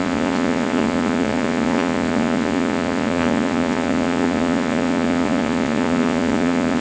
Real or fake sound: fake